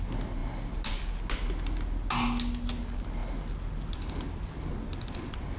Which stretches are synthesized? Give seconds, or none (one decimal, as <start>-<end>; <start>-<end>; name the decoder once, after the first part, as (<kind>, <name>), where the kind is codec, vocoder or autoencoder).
none